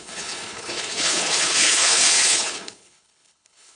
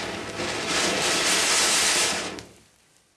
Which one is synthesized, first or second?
first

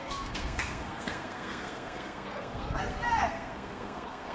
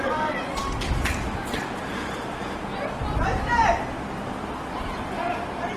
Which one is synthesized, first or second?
first